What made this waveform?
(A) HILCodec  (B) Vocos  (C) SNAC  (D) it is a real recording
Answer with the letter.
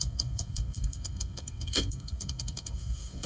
C